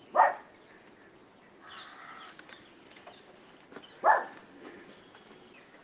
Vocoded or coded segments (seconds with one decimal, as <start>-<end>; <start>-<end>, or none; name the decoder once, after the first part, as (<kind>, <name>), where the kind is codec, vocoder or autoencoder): 4.5-5.0 (codec, SNAC)